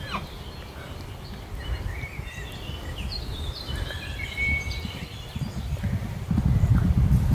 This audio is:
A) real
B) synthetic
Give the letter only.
A